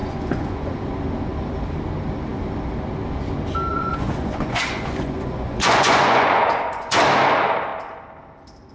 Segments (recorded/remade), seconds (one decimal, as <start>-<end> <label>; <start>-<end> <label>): 0.0-0.7 remade; 0.7-3.7 recorded; 3.7-7.0 remade; 7.0-8.7 recorded